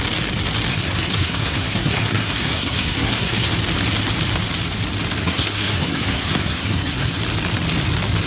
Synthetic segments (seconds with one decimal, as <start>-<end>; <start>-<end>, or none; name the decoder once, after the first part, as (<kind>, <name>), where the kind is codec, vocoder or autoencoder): 0.7-3.5 (codec, SNAC); 5.2-7.2